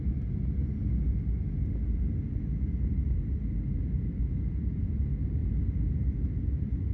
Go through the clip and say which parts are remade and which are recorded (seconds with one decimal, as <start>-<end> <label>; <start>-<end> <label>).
0.0-6.9 recorded